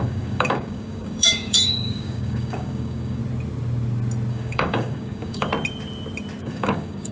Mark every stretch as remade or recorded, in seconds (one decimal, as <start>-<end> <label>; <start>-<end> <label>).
0.0-3.2 remade; 3.2-4.3 recorded; 4.3-5.5 remade; 5.5-6.4 recorded; 6.4-7.1 remade